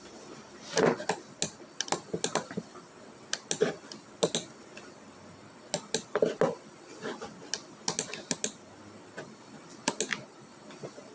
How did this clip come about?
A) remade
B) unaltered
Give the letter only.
B